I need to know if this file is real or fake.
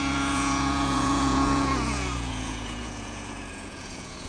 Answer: fake